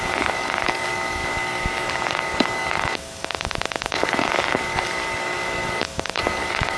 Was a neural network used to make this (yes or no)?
yes